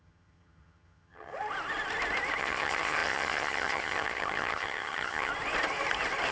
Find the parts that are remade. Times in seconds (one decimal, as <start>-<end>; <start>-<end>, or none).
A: 0.0-1.3; 2.4-5.3